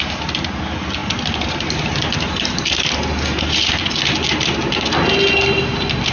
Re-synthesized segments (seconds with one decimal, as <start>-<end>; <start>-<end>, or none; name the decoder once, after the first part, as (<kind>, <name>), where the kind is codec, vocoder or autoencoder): none